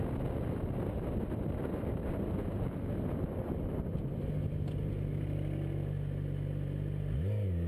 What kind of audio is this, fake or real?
real